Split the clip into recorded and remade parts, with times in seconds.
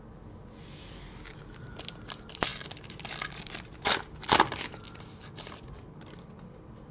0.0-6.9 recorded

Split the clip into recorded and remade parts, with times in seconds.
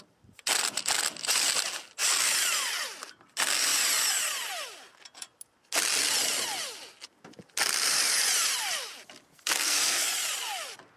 0.0-9.3 recorded; 9.3-10.1 remade; 10.1-11.0 recorded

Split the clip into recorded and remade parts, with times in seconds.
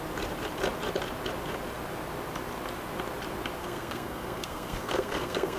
0.0-3.6 recorded; 3.6-5.6 remade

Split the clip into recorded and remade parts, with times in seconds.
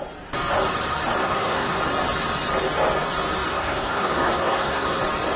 0.0-1.2 recorded; 1.2-1.8 remade; 1.8-3.5 recorded; 3.5-5.0 remade; 5.0-5.4 recorded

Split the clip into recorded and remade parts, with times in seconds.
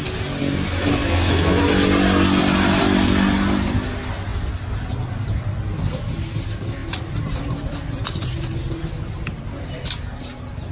0.0-0.9 recorded; 0.9-1.6 remade; 1.6-10.7 recorded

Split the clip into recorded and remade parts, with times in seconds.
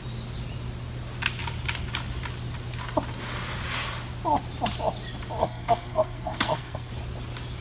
0.0-5.4 recorded; 5.4-6.9 remade; 6.9-7.6 recorded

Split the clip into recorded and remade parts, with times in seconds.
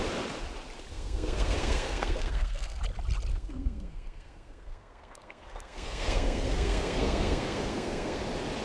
0.0-0.9 recorded; 0.9-2.8 remade; 2.8-3.3 recorded; 3.3-8.2 remade; 8.2-8.6 recorded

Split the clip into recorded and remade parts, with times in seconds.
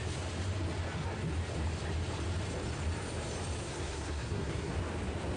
0.0-3.6 recorded; 3.6-4.8 remade; 4.8-5.4 recorded